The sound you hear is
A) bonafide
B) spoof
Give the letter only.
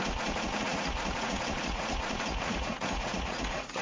B